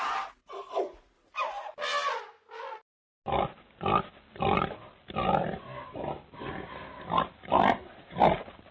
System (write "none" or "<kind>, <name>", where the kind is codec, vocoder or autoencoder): none